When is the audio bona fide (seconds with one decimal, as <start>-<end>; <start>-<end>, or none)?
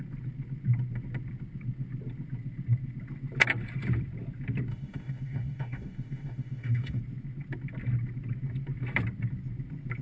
0.0-4.7; 7.0-10.0